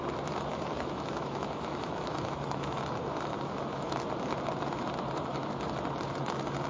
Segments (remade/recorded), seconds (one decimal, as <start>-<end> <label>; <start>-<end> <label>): 0.0-0.5 recorded; 0.5-2.8 remade; 2.8-3.3 recorded; 3.3-3.9 remade; 3.9-6.7 recorded